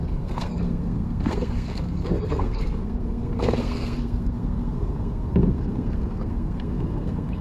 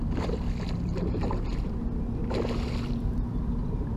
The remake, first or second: first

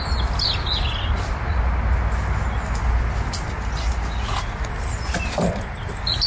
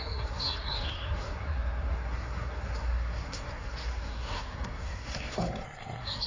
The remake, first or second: second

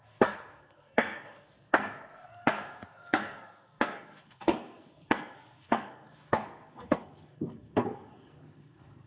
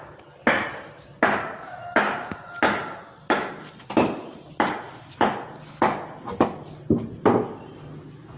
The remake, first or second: first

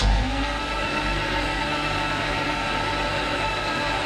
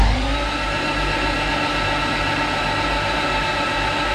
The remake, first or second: first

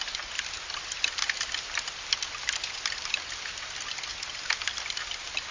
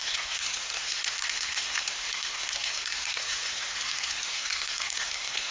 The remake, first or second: second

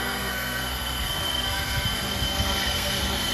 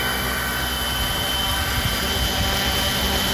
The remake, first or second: first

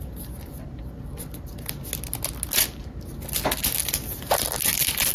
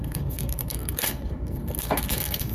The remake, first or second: second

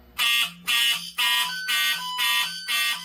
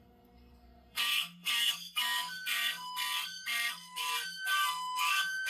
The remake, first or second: second